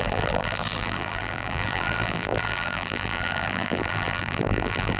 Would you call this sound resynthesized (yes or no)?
yes